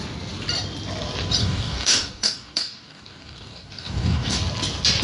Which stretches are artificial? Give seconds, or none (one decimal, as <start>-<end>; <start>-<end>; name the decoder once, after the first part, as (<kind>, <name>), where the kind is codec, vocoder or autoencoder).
1.4-4.4 (codec, DAC)